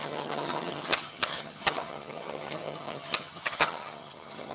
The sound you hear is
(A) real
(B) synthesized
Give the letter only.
B